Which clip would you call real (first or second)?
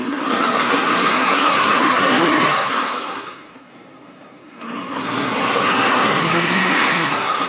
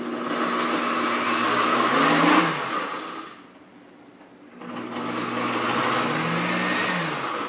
second